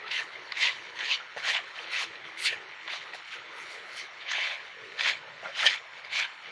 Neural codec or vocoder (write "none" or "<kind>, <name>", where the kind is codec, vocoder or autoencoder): codec, HILCodec